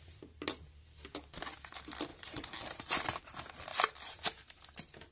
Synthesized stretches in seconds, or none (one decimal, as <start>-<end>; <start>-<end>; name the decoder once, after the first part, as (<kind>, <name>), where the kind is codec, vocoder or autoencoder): 2.1-2.9 (vocoder, BigVGAN v2); 3.7-4.6